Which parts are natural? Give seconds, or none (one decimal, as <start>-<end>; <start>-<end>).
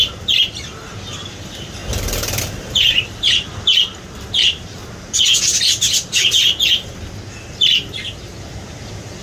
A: 0.0-0.7; 1.8-2.4; 4.8-9.2